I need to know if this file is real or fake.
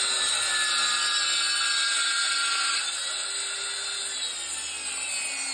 real